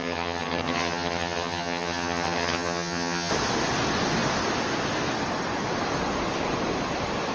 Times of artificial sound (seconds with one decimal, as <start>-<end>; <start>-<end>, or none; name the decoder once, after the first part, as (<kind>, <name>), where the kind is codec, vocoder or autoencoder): 0.0-3.3 (vocoder, HiFi-GAN)